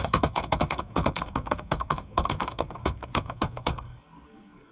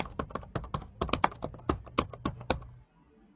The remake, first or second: first